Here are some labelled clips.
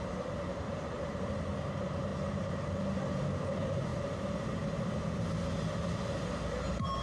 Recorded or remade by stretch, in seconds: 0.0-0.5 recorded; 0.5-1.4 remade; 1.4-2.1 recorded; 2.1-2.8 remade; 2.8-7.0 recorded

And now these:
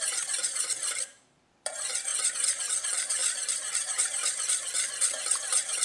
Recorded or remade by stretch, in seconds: 0.0-2.1 remade; 2.1-2.7 recorded; 2.7-5.8 remade

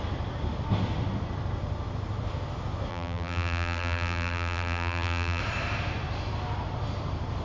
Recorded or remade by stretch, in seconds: 0.0-2.9 recorded; 2.9-5.4 remade; 5.4-7.4 recorded

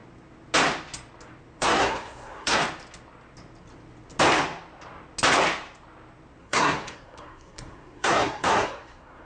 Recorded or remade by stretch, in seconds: 0.0-1.6 recorded; 1.6-2.6 remade; 2.6-6.4 recorded; 6.4-9.2 remade

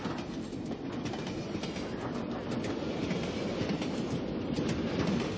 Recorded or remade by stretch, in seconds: 0.0-5.4 recorded

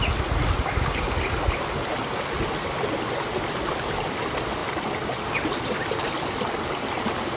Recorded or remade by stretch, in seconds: 0.0-7.4 recorded